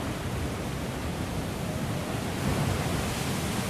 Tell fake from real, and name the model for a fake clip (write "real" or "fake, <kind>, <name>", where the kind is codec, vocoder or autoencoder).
real